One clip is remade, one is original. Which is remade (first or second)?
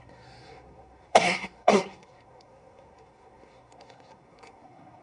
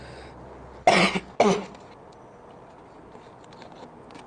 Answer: first